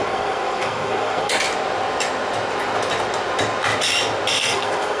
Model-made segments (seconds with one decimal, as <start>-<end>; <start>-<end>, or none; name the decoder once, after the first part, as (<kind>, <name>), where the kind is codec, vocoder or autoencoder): 0.0-1.3 (codec, SNAC); 4.3-5.0